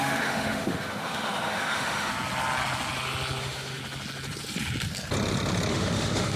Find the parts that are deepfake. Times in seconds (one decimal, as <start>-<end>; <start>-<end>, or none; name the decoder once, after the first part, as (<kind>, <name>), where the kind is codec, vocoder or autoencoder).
0.0-2.1 (autoencoder, DAC-VAE); 3.4-3.8; 5.7-6.4